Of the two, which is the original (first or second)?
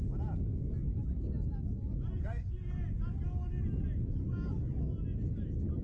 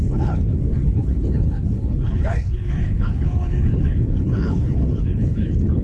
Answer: first